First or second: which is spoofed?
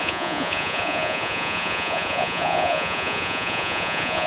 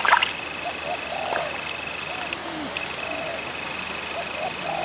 first